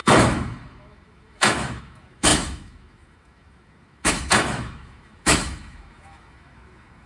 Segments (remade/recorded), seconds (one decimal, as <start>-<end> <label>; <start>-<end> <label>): 0.0-7.1 remade

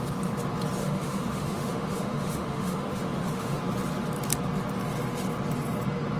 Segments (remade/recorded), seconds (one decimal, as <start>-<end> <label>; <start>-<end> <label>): 0.0-0.8 recorded; 0.8-3.6 remade; 3.6-6.2 recorded

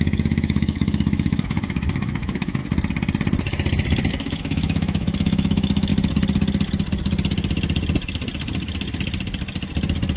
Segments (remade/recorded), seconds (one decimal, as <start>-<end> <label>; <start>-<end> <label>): 0.0-2.6 remade; 2.6-4.1 recorded; 4.1-5.9 remade; 5.9-10.2 recorded

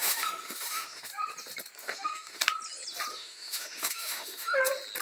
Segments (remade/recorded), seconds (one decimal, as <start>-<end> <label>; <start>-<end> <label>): 0.0-1.1 remade; 1.1-1.8 recorded; 1.8-2.4 remade; 2.4-3.1 recorded; 3.1-4.6 remade; 4.6-5.0 recorded

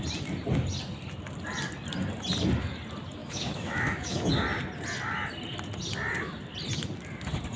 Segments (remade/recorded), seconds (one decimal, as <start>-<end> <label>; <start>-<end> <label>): 0.0-3.2 recorded; 3.2-4.3 remade; 4.3-7.6 recorded